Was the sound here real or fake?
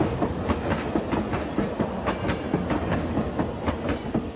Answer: real